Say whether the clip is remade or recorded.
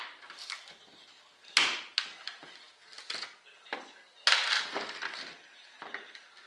recorded